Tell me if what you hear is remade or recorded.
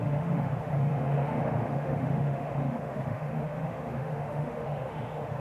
remade